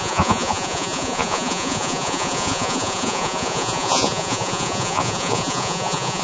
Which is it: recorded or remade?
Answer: remade